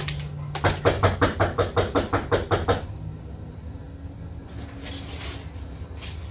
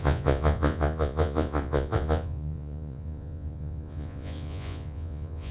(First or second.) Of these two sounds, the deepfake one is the second